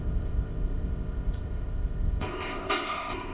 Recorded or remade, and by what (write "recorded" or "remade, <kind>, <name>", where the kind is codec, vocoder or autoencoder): remade, codec, ZipCodec